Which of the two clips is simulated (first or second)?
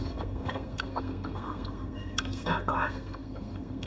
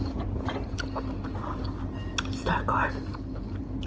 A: first